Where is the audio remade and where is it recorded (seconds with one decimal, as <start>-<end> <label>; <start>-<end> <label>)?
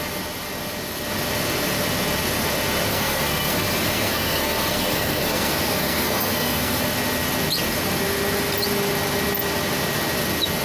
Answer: 0.0-2.9 recorded; 2.9-6.8 remade; 6.8-10.6 recorded